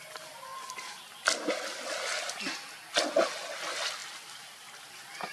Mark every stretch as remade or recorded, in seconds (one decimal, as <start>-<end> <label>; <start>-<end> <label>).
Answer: 0.0-0.5 recorded; 0.5-1.2 remade; 1.2-5.3 recorded